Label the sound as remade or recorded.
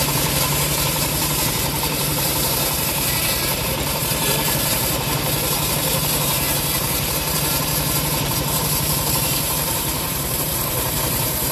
remade